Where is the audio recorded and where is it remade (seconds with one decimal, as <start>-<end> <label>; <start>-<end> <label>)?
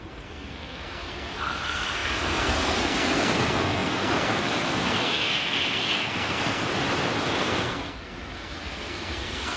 0.0-6.7 remade; 6.7-7.4 recorded; 7.4-9.6 remade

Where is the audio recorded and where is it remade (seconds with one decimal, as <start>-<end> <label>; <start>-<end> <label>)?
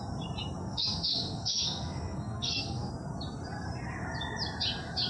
0.0-0.6 recorded; 0.6-2.9 remade; 2.9-5.1 recorded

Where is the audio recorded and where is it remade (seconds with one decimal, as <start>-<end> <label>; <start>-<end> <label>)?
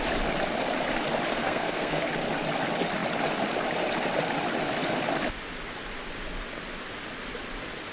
0.0-1.3 recorded; 1.3-2.1 remade; 2.1-7.9 recorded